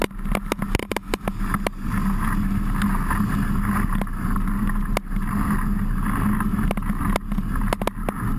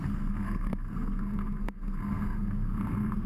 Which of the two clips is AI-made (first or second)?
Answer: second